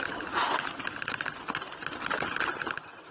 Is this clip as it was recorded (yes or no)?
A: yes